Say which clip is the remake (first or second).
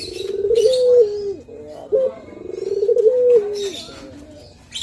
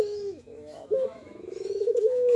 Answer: second